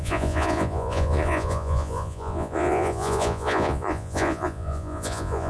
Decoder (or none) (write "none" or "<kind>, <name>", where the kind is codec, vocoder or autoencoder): vocoder, Vocos